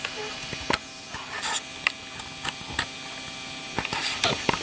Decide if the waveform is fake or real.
real